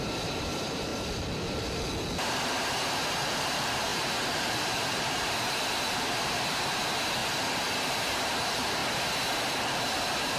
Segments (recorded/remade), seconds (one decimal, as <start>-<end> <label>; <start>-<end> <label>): 0.0-0.9 remade; 0.9-3.1 recorded; 3.1-7.2 remade; 7.2-7.8 recorded; 7.8-8.8 remade; 8.8-9.8 recorded; 9.8-10.4 remade